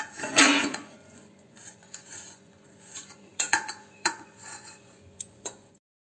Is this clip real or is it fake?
fake